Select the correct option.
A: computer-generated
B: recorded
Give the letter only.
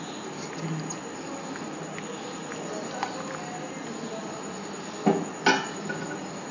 B